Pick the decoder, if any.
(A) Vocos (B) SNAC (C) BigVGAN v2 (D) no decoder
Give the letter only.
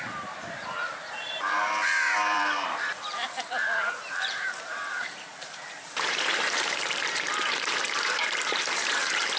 C